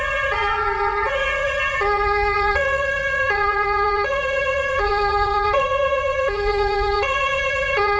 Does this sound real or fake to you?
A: fake